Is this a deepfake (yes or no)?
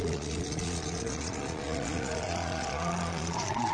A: yes